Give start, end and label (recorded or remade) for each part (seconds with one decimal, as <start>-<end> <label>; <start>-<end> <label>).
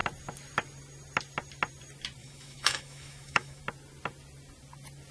0.0-2.2 recorded; 2.2-3.6 remade; 3.6-5.1 recorded